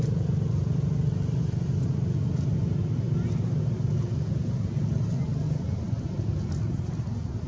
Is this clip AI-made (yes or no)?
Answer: no